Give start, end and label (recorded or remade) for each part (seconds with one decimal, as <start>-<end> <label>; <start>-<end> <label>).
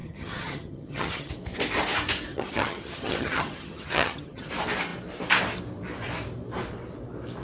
0.0-1.3 remade; 1.3-2.3 recorded; 2.3-4.5 remade; 4.5-7.4 recorded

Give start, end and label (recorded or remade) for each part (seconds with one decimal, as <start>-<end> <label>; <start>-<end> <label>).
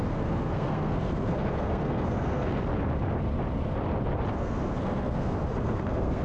0.0-2.5 remade; 2.5-4.3 recorded; 4.3-6.2 remade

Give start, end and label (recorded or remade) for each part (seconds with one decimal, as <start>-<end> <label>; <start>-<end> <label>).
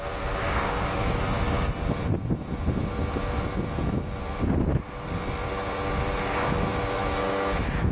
0.0-0.4 recorded; 0.4-1.2 remade; 1.2-7.9 recorded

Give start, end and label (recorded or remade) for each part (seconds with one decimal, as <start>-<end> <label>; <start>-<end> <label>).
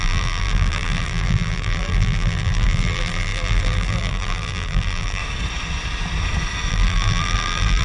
0.0-5.2 remade; 5.2-6.7 recorded; 6.7-7.8 remade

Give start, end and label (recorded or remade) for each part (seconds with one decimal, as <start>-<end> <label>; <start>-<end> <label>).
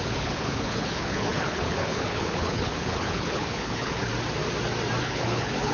0.0-4.1 remade; 4.1-5.0 recorded; 5.0-5.7 remade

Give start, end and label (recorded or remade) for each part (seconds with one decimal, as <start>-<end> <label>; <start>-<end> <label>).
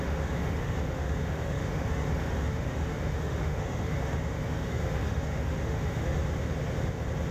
0.0-6.2 remade; 6.2-7.3 recorded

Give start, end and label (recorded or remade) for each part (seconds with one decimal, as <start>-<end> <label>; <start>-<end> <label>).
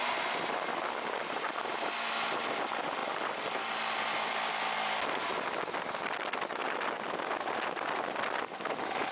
0.0-9.1 recorded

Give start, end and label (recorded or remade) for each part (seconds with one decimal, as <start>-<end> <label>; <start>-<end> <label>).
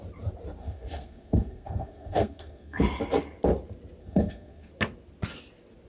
0.0-0.6 recorded; 0.6-2.8 remade; 2.8-4.0 recorded; 4.0-4.7 remade; 4.7-5.9 recorded